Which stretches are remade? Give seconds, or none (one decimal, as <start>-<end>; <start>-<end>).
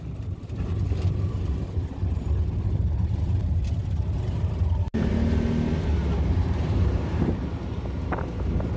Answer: 6.0-7.4